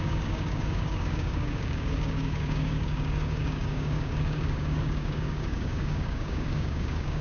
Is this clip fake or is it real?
fake